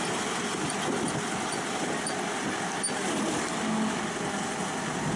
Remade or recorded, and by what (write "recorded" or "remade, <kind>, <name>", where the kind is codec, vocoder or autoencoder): recorded